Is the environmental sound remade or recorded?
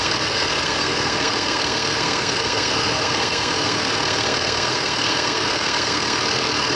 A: remade